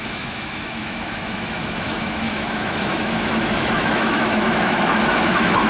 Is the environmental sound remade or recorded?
remade